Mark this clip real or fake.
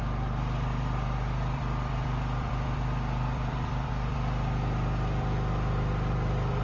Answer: fake